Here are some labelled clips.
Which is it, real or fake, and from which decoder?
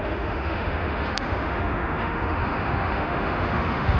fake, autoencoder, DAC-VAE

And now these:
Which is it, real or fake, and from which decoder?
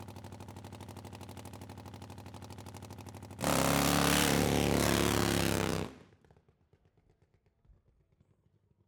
real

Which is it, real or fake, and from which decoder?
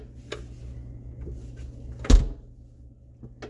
real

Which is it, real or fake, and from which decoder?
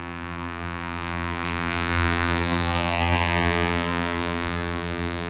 fake, vocoder, BigVGAN v2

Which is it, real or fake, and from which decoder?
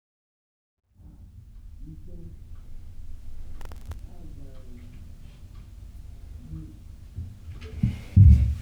real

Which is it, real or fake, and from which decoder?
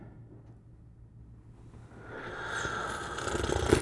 real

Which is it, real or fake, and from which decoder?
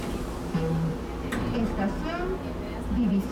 real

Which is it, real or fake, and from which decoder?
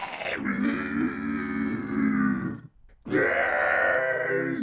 real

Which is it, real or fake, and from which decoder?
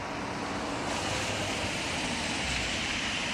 fake, vocoder, BigVGAN v2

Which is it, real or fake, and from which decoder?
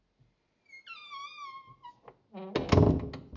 real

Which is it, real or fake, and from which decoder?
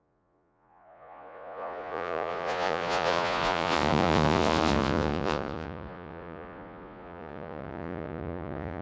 fake, vocoder, Vocos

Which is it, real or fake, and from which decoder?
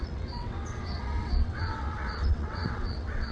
fake, vocoder, WaveNeXt